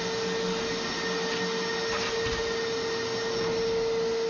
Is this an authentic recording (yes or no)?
yes